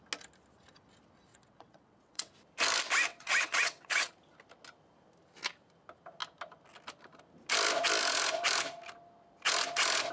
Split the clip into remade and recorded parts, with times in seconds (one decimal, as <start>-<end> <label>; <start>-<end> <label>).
0.0-1.3 recorded; 1.3-2.3 remade; 2.3-3.1 recorded; 3.1-4.1 remade; 4.1-10.1 recorded